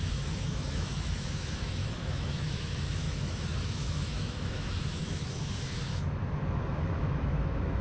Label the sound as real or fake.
fake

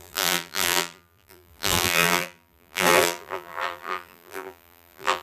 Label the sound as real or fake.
fake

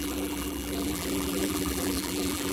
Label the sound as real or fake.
fake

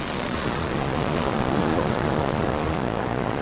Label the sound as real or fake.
fake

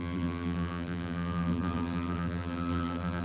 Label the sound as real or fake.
fake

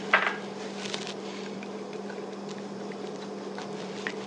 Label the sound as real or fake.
fake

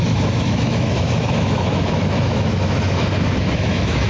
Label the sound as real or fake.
fake